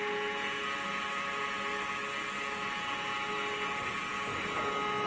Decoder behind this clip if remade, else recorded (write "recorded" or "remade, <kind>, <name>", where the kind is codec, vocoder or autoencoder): recorded